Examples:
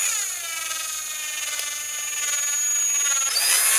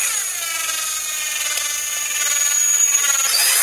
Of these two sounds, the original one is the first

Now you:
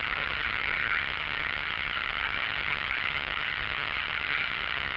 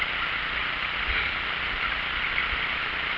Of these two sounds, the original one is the second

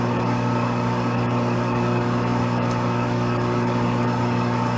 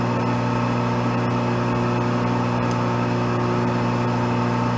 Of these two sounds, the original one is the second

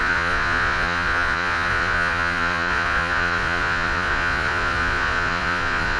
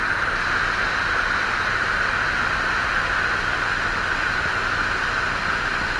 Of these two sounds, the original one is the second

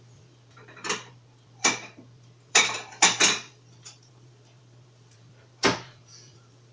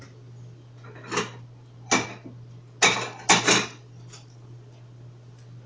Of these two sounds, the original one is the second